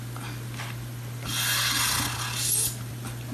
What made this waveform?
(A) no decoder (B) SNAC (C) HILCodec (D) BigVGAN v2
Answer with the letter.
A